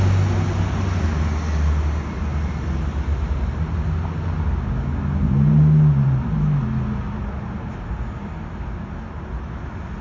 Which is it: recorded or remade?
recorded